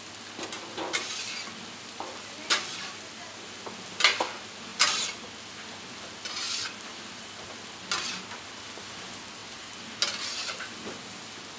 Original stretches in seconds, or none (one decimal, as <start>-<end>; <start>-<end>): 0.0-4.7; 5.7-9.4; 10.0-11.6